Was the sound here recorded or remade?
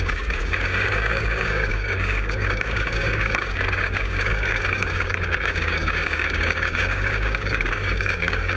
remade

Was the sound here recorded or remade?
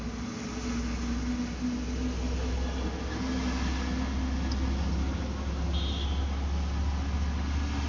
recorded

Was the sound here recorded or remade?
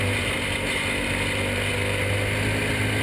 recorded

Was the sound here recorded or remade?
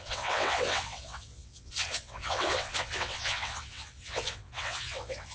remade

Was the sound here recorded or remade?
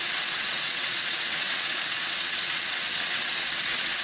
remade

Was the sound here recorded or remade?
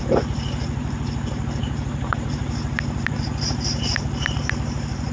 remade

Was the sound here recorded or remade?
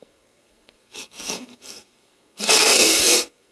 remade